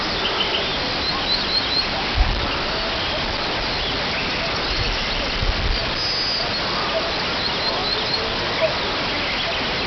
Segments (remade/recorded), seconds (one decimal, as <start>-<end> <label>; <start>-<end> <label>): 0.0-9.9 recorded